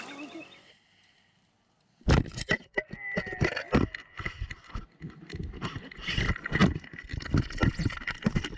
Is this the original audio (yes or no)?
yes